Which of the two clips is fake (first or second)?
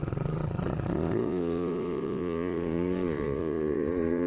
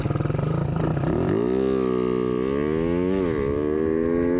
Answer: first